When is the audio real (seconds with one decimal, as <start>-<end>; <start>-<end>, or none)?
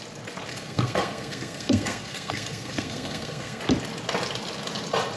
0.0-0.5; 3.6-5.2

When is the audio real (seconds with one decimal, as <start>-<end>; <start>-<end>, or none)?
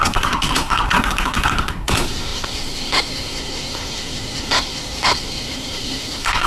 none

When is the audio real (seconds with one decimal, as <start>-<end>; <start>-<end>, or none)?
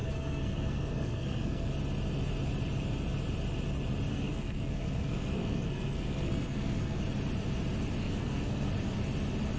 1.7-4.1; 7.0-8.0; 8.7-9.6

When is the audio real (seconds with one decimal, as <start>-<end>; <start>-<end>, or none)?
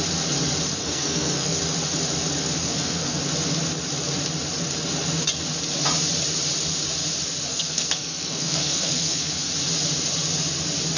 0.0-0.8; 1.6-2.6; 3.2-7.5; 9.5-11.0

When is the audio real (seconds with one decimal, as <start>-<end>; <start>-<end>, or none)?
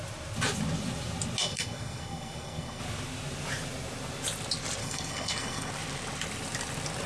0.0-1.4; 2.8-4.8; 5.7-7.1